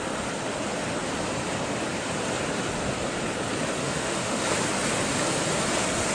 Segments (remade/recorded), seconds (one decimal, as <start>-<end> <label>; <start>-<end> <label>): 0.0-3.8 recorded; 3.8-4.4 remade; 4.4-6.1 recorded